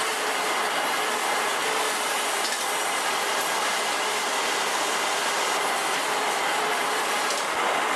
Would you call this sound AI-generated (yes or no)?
no